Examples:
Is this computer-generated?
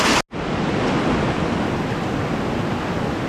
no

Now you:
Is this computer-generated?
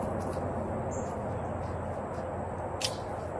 no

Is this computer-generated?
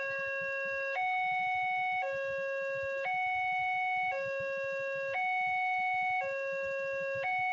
no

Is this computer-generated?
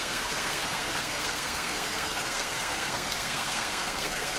yes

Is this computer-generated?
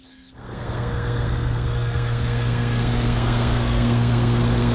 yes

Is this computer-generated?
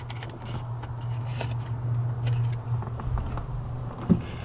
no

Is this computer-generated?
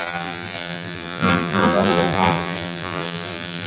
yes